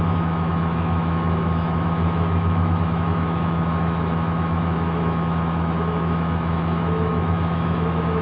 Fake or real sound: fake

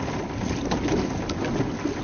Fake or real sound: real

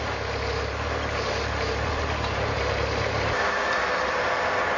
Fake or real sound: real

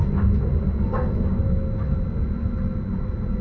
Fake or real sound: real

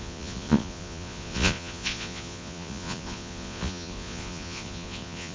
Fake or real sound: fake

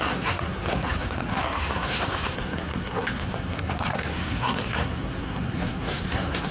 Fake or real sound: fake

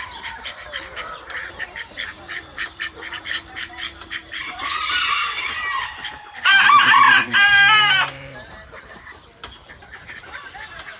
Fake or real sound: fake